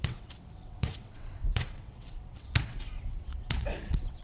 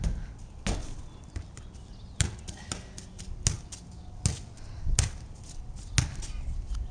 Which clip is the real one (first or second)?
second